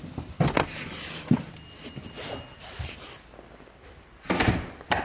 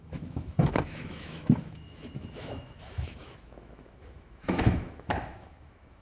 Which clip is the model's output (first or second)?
second